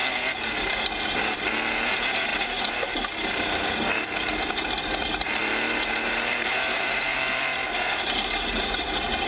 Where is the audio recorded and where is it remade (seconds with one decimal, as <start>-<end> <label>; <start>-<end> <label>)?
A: 0.0-0.7 remade; 0.7-5.4 recorded; 5.4-8.1 remade; 8.1-9.3 recorded